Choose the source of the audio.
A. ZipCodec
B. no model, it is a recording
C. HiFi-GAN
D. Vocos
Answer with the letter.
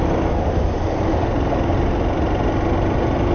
B